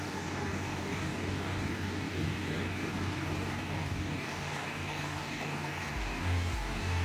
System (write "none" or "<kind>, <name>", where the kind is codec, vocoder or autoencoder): codec, DAC